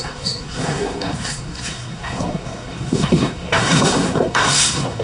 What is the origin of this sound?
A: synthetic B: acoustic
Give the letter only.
A